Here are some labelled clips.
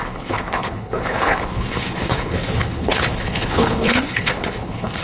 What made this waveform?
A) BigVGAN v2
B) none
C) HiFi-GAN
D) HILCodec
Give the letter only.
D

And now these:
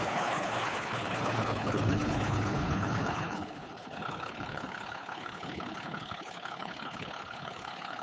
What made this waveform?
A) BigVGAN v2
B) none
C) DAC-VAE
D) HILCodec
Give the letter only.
D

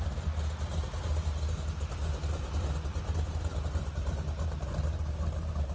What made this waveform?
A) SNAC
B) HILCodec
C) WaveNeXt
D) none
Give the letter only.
D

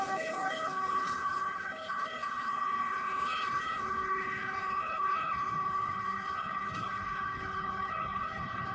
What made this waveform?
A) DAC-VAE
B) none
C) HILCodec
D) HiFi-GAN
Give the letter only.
C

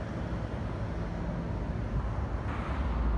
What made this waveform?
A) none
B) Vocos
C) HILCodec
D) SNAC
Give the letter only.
A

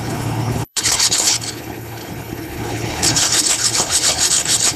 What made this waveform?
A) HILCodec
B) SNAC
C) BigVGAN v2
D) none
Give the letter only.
A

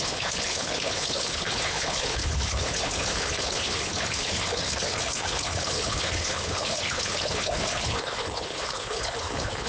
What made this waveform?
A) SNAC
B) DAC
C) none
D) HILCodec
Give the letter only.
D